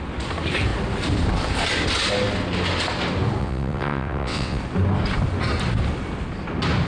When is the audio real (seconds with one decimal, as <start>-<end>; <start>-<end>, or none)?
0.0-3.4; 4.6-6.9